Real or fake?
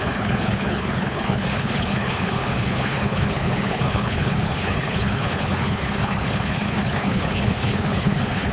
fake